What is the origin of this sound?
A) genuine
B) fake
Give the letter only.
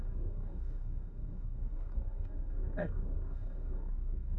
B